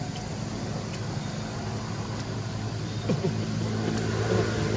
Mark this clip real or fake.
real